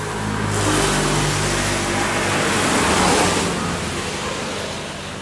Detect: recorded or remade recorded